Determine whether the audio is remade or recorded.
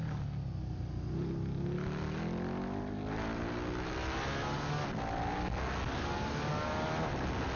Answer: recorded